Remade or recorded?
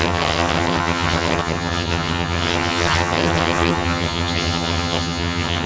remade